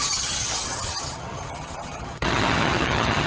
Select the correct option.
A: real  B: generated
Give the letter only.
B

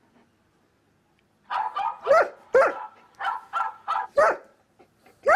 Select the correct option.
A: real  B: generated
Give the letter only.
A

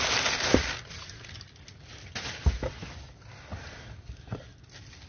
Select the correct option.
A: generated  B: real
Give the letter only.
B